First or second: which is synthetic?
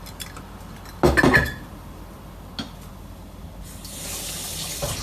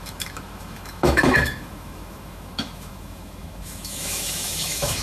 second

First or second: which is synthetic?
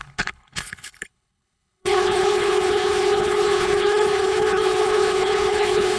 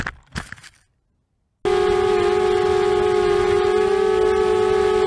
first